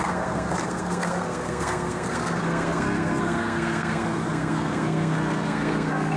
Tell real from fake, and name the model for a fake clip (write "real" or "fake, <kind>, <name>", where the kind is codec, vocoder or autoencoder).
fake, codec, SNAC